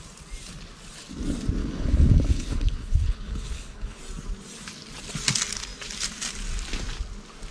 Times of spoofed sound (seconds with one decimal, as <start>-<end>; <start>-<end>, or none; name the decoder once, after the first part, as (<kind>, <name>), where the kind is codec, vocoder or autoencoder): 1.6-4.0 (codec, HILCodec)